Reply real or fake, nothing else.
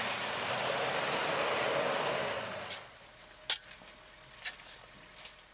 real